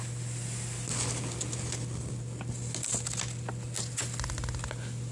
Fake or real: real